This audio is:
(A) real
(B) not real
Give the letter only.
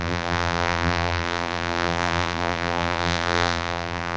B